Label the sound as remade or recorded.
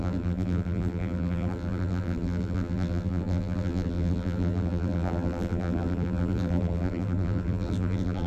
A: remade